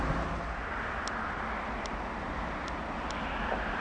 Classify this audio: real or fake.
real